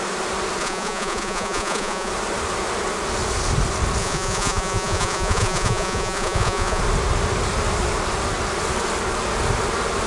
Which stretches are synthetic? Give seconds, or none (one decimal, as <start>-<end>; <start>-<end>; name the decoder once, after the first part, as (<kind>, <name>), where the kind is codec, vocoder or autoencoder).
0.6-2.1 (vocoder, Vocos); 4.0-6.8